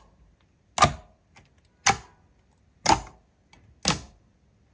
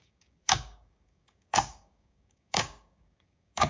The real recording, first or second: first